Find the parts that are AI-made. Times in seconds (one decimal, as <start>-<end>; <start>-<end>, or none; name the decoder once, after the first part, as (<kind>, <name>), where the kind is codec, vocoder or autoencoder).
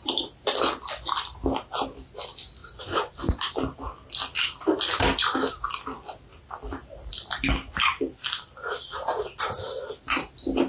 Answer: 2.6-3.5 (vocoder, BigVGAN v2)